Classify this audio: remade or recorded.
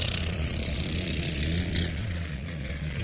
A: remade